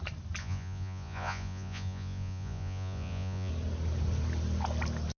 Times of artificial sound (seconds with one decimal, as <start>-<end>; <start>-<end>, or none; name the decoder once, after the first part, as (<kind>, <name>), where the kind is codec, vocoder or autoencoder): 0.4-3.5 (vocoder, Vocos)